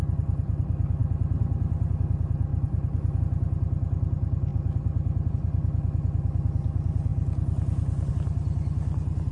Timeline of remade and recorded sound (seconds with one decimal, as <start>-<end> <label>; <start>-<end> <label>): 0.0-9.3 recorded